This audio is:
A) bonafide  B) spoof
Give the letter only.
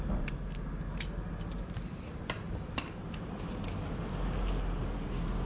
A